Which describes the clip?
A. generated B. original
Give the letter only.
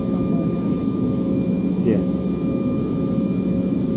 A